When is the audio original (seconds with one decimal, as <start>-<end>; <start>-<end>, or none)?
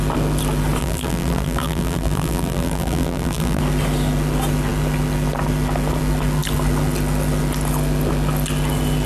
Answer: 0.0-0.8; 3.6-9.1